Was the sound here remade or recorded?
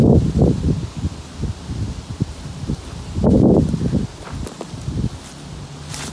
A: recorded